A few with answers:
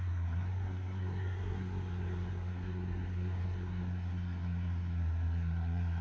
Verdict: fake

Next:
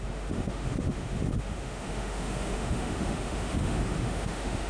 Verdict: fake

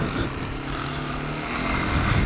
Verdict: real